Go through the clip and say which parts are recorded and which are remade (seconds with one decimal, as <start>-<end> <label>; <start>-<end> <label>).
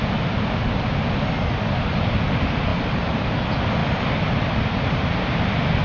0.0-2.7 recorded; 2.7-3.2 remade; 3.2-3.8 recorded; 3.8-4.6 remade; 4.6-5.8 recorded